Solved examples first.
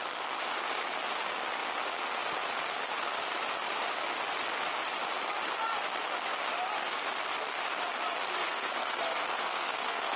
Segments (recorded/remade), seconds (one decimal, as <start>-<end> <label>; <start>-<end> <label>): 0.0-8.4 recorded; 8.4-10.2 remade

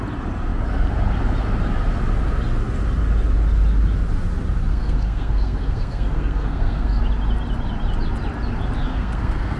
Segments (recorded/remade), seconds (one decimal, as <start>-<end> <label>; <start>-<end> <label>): 0.0-4.7 recorded; 4.7-7.0 remade; 7.0-8.9 recorded; 8.9-9.6 remade

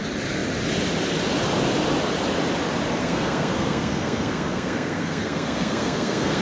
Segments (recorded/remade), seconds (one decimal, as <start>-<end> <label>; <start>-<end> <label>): 0.0-3.0 recorded; 3.0-6.4 remade

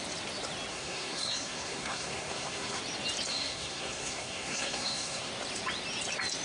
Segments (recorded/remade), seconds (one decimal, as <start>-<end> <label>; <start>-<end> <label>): 0.0-0.7 recorded; 0.7-2.8 remade; 2.8-3.3 recorded; 3.3-5.3 remade; 5.3-6.4 recorded

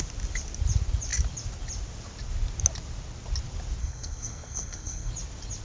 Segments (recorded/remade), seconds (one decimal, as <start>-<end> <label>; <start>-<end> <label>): 0.0-3.8 recorded; 3.8-5.1 remade; 5.1-5.6 recorded

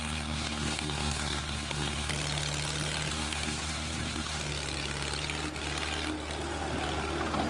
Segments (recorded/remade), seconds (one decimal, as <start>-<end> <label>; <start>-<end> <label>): 0.0-2.1 remade; 2.1-3.1 recorded; 3.1-4.4 remade; 4.4-7.5 recorded